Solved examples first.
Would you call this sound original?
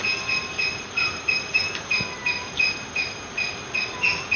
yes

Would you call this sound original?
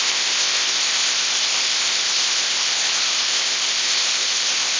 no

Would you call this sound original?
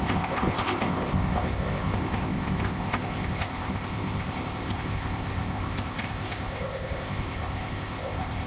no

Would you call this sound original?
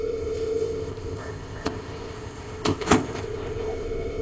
no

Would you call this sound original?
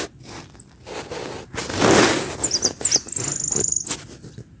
yes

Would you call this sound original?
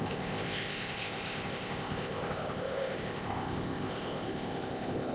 no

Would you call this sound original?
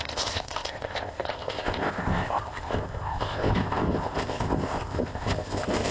no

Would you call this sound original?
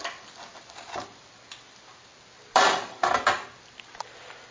yes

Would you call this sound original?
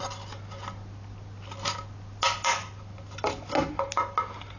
yes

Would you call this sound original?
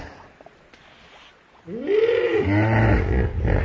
yes